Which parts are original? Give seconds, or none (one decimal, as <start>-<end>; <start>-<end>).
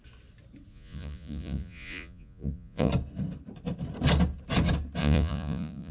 0.0-0.7; 2.9-5.0